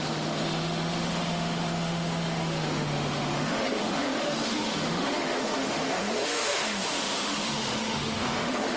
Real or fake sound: fake